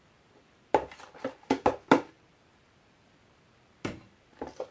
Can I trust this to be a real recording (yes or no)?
yes